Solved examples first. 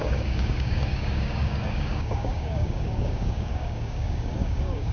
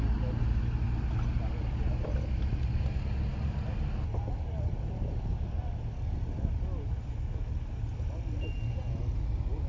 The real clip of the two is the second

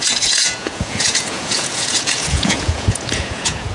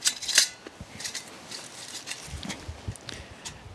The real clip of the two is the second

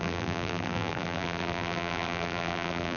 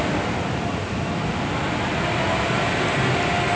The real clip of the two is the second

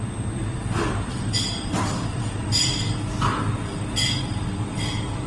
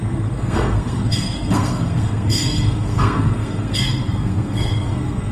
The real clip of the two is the first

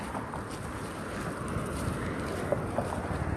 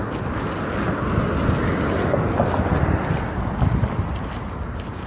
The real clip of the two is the second